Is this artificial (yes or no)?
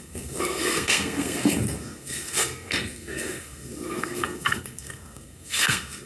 yes